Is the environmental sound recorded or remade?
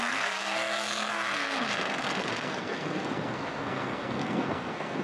remade